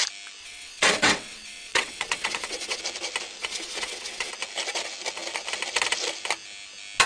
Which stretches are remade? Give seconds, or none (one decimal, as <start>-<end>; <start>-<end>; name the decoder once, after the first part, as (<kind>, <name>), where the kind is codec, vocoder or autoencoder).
0.4-2.8 (vocoder, WaveNeXt); 3.4-4.3